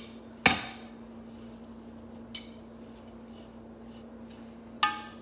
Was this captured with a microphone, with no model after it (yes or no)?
yes